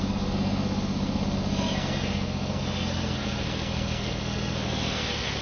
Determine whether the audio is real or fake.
fake